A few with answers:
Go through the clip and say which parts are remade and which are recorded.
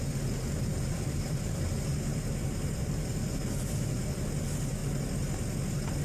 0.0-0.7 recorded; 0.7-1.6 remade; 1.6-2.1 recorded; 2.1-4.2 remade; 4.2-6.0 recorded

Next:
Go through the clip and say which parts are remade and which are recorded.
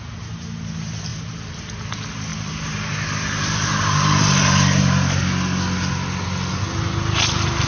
0.0-2.3 recorded; 2.3-4.8 remade; 4.8-7.7 recorded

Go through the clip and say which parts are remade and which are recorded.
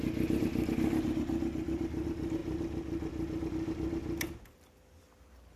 0.0-5.6 recorded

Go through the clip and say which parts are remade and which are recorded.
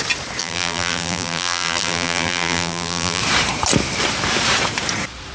0.0-0.4 recorded; 0.4-3.2 remade; 3.2-5.3 recorded